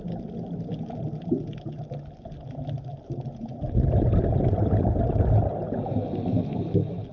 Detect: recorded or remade recorded